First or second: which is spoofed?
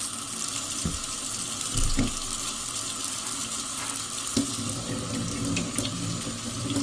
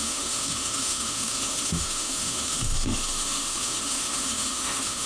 second